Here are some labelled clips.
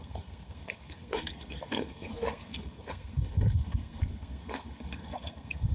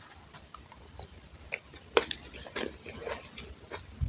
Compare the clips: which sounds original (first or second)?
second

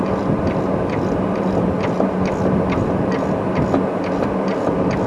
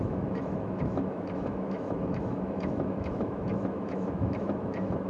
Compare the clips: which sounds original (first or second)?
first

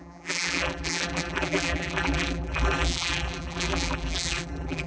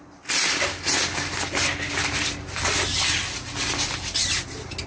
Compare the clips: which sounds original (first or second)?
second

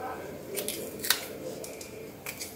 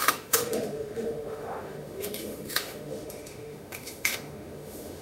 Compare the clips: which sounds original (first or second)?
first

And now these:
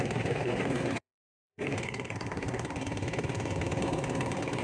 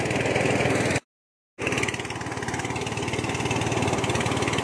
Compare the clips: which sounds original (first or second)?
second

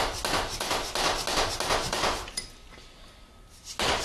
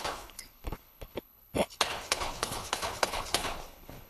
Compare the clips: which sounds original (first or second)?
first